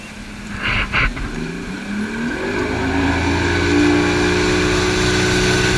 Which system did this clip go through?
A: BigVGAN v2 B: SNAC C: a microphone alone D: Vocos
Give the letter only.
C